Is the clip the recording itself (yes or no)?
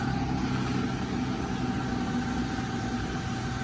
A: yes